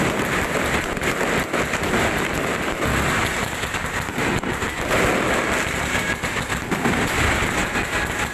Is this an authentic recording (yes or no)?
yes